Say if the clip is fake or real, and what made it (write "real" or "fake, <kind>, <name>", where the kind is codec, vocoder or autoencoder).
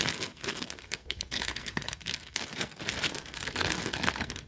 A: fake, codec, SNAC